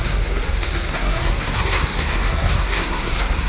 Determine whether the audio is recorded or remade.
remade